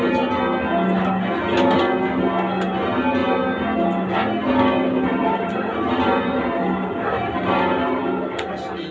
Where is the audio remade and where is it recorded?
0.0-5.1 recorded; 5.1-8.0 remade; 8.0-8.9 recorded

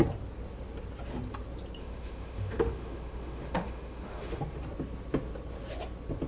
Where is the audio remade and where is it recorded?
0.0-1.8 recorded; 1.8-4.4 remade; 4.4-6.3 recorded

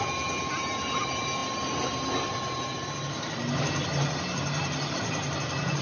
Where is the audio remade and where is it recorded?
0.0-5.8 recorded

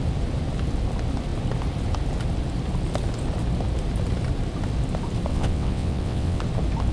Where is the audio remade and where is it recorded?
0.0-5.3 recorded; 5.3-6.4 remade; 6.4-6.9 recorded

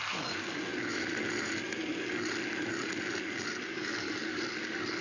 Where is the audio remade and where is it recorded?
0.0-3.7 recorded; 3.7-4.4 remade; 4.4-5.0 recorded

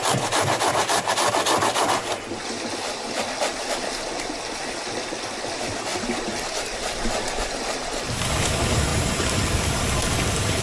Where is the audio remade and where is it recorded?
0.0-10.6 recorded

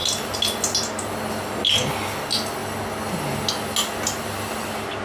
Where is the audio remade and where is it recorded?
0.0-5.0 recorded